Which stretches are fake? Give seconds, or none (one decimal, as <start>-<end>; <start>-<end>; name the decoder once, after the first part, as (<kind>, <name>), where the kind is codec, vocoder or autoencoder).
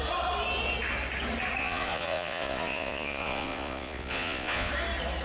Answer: 1.6-4.7 (vocoder, Vocos)